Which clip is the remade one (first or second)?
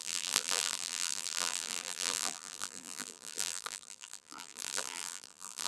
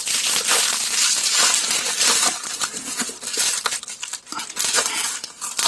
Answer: first